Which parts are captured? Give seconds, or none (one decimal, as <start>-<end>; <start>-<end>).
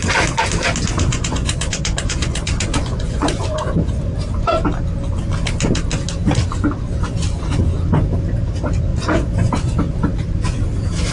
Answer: 0.0-1.1; 4.0-8.9; 9.5-11.1